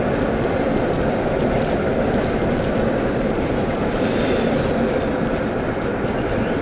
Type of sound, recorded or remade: remade